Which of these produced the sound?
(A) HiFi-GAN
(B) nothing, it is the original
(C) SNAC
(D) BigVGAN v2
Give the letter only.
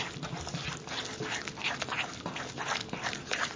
B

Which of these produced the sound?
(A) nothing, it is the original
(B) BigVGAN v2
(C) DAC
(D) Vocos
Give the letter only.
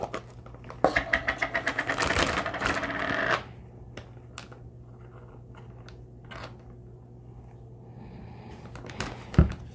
A